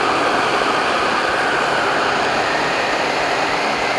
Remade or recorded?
recorded